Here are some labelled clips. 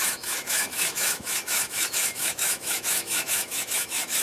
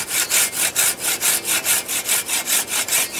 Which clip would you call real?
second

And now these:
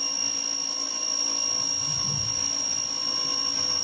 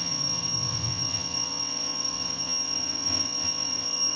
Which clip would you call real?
first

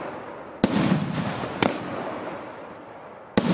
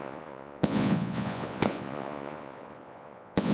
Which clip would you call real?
first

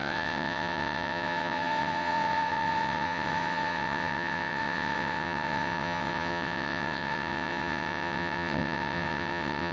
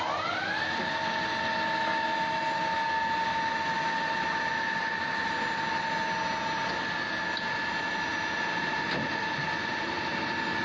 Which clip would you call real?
second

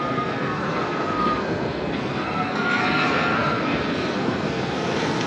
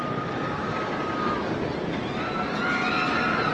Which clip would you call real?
second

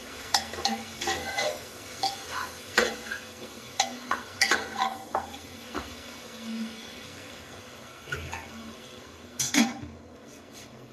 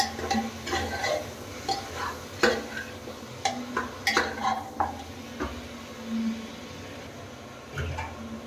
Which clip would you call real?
second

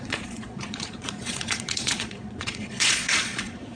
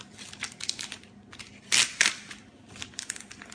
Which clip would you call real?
second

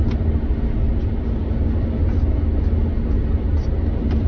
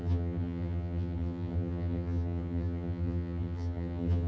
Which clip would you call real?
first